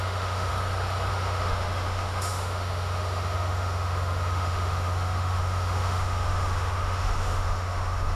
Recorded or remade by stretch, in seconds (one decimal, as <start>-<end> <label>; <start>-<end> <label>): 0.0-0.5 remade; 0.5-1.1 recorded; 1.1-8.2 remade